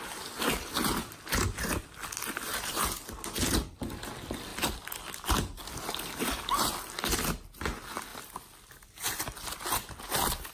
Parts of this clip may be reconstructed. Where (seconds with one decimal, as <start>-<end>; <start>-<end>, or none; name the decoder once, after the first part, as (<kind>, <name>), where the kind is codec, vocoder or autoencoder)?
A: 4.5-5.8 (vocoder, BigVGAN v2); 8.1-9.0